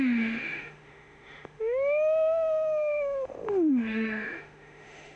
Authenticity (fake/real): fake